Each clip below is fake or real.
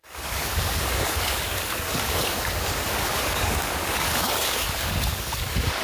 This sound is fake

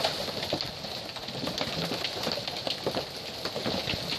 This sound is real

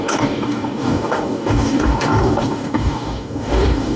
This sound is fake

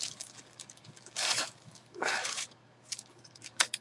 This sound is fake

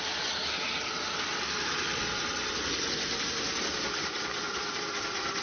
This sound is real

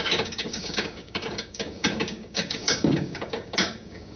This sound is fake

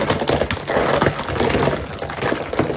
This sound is real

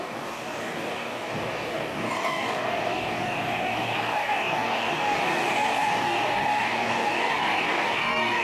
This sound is fake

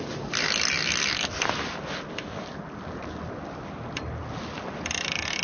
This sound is real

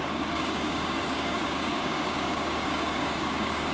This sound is fake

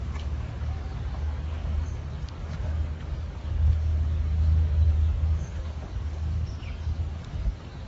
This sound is fake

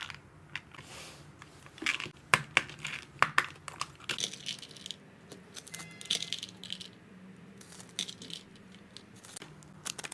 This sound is real